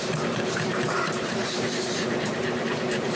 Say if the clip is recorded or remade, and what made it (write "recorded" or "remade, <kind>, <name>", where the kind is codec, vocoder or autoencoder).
remade, vocoder, BigVGAN v2